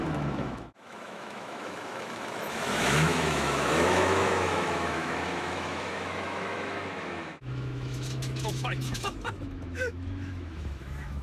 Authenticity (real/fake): fake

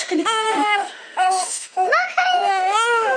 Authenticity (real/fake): fake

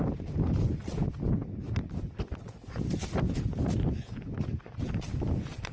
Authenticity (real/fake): real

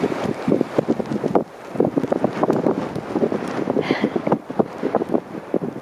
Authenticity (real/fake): real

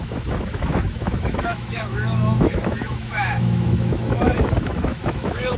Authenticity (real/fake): fake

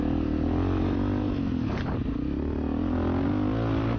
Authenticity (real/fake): real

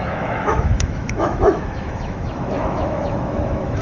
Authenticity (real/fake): fake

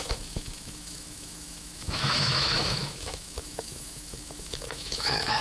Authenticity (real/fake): fake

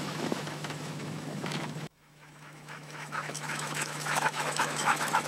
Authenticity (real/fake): fake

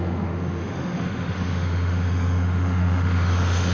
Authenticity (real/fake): fake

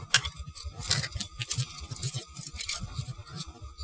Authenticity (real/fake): real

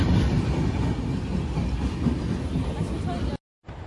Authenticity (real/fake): real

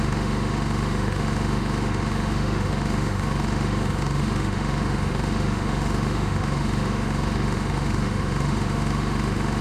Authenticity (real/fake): fake